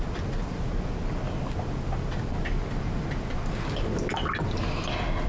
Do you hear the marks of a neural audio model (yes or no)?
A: no